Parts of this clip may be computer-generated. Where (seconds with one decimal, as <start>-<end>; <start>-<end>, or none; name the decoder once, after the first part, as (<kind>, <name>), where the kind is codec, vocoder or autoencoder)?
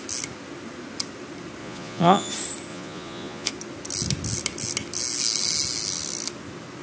1.6-2.3 (vocoder, Vocos); 2.7-3.5